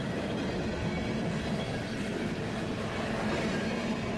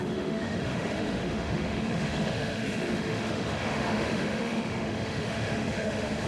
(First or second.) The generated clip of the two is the second